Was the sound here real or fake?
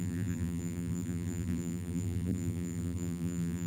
fake